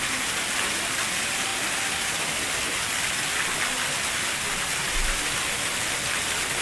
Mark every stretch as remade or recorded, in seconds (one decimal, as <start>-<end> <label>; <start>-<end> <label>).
0.0-6.6 recorded